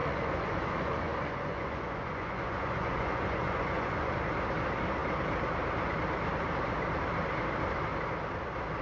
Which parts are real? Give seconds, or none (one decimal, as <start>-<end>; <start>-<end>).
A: 4.2-8.8